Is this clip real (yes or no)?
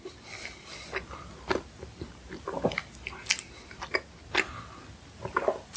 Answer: yes